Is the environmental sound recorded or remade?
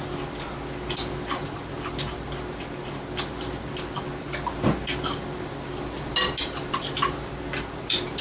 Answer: recorded